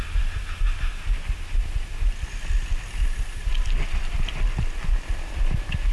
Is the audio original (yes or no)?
yes